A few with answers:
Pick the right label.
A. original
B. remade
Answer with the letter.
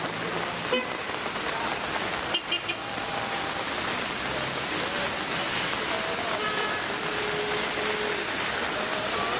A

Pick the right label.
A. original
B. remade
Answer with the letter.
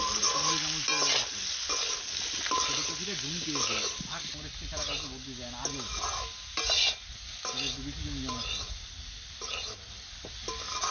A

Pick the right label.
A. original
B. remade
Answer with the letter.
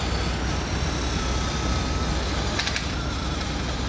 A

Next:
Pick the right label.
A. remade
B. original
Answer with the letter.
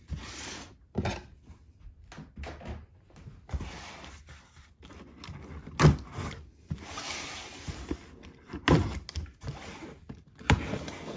B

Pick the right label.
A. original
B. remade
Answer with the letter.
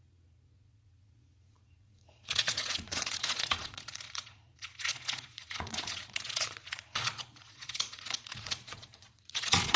B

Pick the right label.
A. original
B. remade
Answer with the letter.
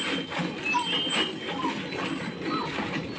A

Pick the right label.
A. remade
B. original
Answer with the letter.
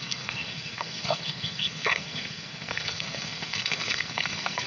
A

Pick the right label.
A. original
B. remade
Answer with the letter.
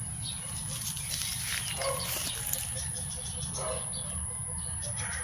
A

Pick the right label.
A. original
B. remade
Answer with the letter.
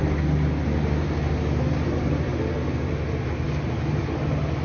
A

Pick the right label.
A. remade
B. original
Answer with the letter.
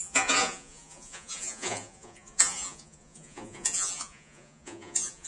A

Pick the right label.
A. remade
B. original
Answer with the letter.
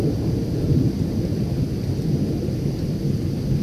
B